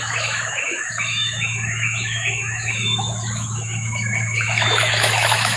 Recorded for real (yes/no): no